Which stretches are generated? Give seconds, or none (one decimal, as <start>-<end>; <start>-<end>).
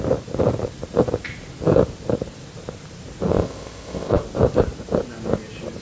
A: 3.3-4.2